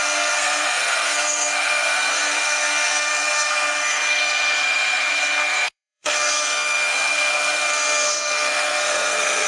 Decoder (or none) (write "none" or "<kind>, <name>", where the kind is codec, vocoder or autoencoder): codec, SNAC